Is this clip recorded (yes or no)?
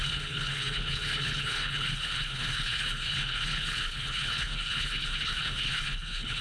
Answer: no